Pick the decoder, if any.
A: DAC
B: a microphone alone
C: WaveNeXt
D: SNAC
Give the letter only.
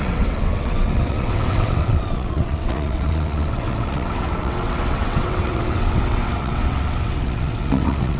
C